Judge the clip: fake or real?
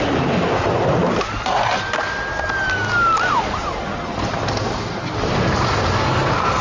real